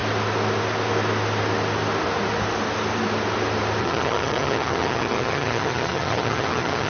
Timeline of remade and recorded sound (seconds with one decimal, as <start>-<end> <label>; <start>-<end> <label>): 0.0-3.8 recorded; 3.8-6.9 remade